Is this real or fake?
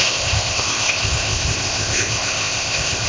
fake